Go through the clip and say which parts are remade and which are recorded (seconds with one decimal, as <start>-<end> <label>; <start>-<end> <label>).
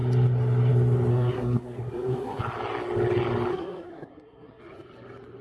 0.0-1.1 recorded; 1.1-2.4 remade; 2.4-3.5 recorded; 3.5-4.6 remade; 4.6-5.4 recorded